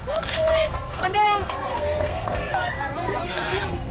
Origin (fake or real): fake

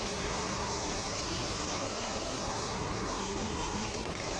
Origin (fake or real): fake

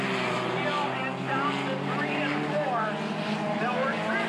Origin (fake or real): real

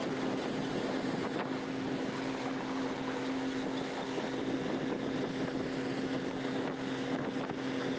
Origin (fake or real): real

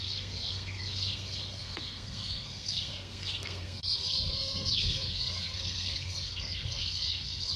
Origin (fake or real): fake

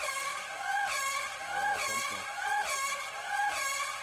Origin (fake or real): real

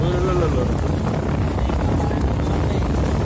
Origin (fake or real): real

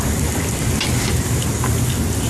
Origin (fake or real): real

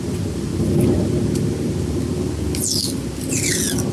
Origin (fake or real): real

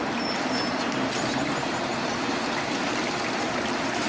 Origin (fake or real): real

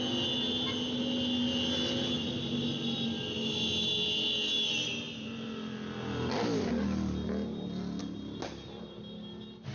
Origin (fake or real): real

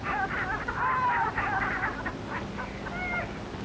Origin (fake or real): real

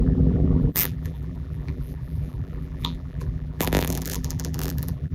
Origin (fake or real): fake